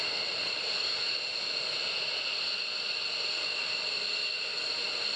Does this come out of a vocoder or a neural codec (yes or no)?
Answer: no